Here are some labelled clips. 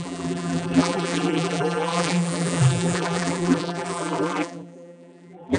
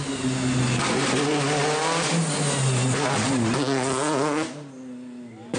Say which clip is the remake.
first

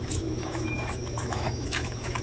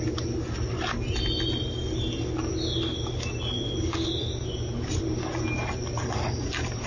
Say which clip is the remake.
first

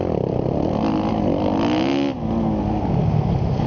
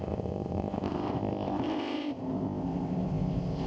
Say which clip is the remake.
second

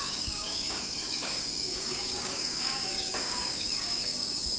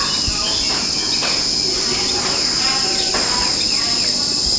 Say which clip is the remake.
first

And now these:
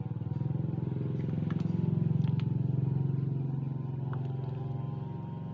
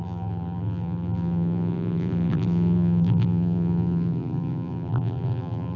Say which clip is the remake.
second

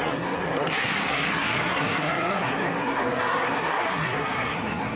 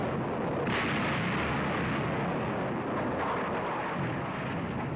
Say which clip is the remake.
first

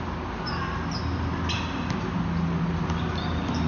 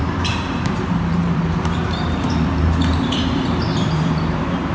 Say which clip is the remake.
second